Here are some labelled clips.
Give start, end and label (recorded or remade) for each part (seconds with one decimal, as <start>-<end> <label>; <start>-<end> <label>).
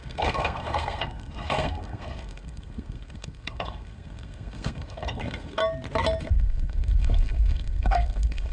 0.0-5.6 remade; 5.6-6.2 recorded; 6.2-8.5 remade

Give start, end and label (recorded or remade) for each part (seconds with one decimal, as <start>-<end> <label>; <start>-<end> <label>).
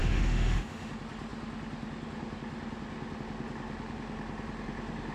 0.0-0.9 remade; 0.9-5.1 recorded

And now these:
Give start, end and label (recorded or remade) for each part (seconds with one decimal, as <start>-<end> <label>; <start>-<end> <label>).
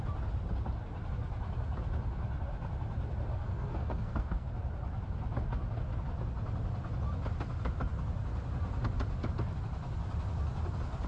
0.0-3.3 recorded; 3.3-4.5 remade; 4.5-11.1 recorded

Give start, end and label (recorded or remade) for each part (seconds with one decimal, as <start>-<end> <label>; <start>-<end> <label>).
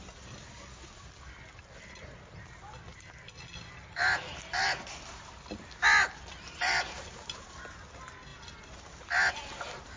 0.0-10.0 recorded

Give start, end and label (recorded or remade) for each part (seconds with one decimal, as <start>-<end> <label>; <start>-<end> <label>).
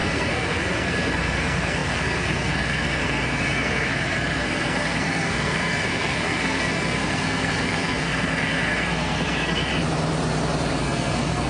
0.0-9.7 remade; 9.7-10.8 recorded; 10.8-11.5 remade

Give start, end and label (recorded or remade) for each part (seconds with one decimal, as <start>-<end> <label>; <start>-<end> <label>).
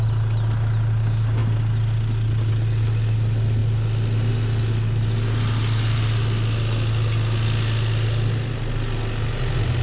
0.0-9.8 recorded